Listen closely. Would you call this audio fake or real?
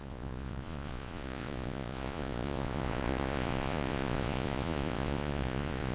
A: fake